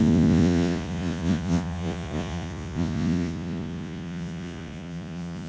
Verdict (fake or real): fake